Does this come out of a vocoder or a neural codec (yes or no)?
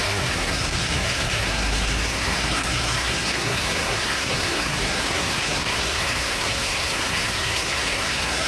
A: yes